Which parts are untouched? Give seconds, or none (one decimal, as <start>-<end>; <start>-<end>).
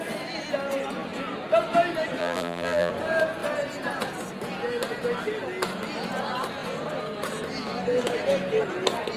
0.0-2.2; 2.9-9.2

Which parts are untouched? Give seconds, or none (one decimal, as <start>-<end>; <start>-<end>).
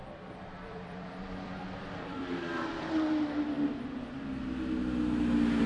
2.2-5.7